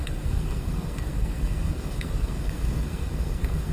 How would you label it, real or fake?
fake